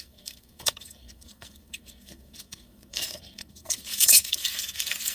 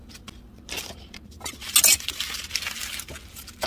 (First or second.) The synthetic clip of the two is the first